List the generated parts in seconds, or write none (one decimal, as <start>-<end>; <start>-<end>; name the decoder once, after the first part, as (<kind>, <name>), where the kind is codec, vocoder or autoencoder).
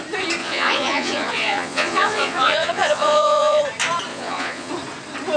0.4-3.6 (vocoder, Vocos); 4.1-4.7